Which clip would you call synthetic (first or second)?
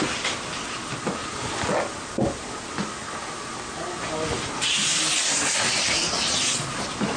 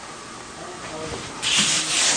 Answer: second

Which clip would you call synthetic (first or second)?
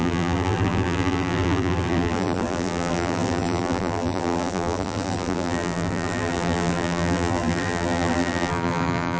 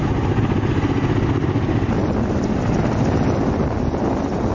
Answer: first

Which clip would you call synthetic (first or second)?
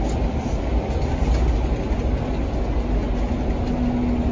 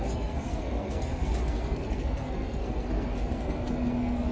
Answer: second